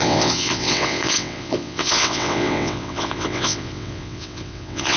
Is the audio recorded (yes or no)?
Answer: no